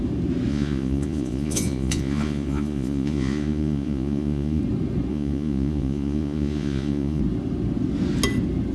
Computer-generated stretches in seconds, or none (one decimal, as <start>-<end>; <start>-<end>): 0.5-4.6; 5.1-7.2